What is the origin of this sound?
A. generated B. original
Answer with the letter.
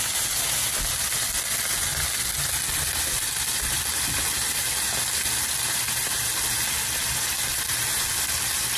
B